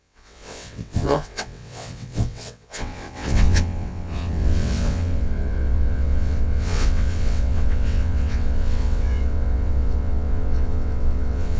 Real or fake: fake